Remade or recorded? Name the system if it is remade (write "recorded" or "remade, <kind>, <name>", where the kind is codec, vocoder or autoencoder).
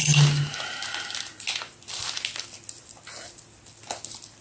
recorded